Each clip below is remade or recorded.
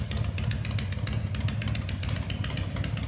recorded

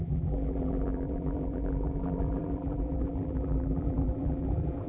remade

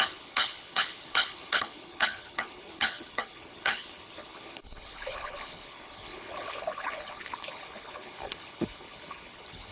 remade